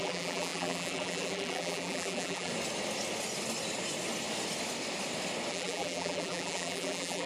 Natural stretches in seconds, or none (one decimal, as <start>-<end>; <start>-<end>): 2.5-5.5